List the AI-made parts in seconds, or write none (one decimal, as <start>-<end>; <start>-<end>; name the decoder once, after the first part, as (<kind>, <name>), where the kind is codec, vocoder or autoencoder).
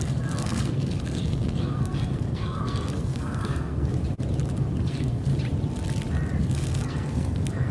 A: 0.0-3.9 (codec, SNAC); 4.8-5.3; 6.4-7.7